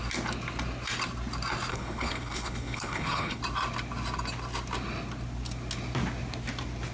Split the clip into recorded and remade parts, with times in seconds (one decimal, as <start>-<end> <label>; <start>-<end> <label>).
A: 0.0-1.7 recorded; 1.7-3.4 remade; 3.4-6.9 recorded